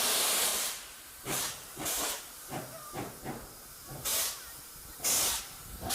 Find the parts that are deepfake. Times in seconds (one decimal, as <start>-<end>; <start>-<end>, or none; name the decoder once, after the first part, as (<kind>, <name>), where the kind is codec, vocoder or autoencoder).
0.5-3.1 (vocoder, BigVGAN v2)

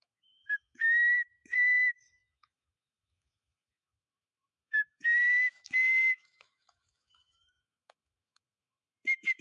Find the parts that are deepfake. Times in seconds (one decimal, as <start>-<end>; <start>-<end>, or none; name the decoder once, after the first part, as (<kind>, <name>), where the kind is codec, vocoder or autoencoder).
0.0-9.4 (autoencoder, DAC-VAE)

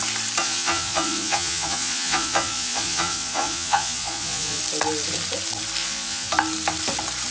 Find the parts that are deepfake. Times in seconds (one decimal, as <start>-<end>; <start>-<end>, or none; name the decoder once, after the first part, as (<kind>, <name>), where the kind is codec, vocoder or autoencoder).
0.4-4.6 (vocoder, Vocos); 5.8-6.3

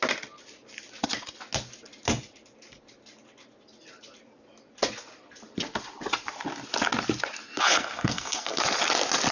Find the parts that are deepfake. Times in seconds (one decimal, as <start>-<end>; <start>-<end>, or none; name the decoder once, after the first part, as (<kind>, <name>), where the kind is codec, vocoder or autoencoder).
7.4-8.6 (codec, SNAC)

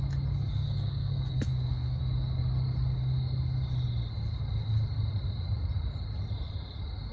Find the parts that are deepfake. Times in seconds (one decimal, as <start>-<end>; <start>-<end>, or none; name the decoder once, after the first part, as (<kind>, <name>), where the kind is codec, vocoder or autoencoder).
0.5-2.0 (codec, SNAC)

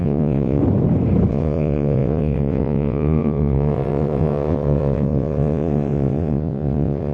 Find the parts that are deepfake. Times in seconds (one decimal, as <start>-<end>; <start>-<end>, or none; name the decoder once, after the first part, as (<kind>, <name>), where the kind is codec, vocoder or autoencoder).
0.0-0.6 (vocoder, WaveNeXt); 1.3-7.1

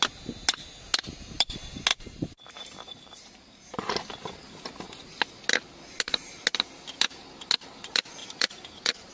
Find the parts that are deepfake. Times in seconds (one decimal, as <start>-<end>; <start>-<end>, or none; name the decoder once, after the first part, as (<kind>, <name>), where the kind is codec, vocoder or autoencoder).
1.9-3.9 (vocoder, BigVGAN v2); 8.2-9.1

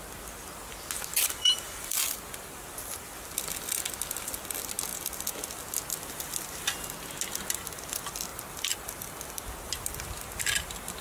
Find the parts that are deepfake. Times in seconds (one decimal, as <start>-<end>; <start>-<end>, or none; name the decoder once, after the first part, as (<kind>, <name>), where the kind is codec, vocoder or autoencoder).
1.1-2.0 (vocoder, BigVGAN v2); 8.3-9.4